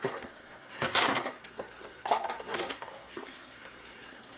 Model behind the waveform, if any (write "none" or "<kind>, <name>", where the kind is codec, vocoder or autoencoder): codec, SNAC